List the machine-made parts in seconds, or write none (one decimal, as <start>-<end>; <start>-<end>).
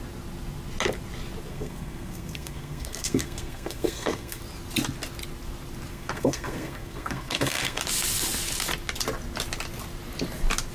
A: 1.5-4.4; 5.9-7.8